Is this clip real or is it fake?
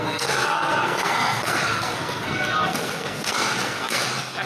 fake